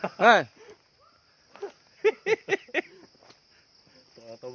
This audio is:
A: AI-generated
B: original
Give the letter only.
B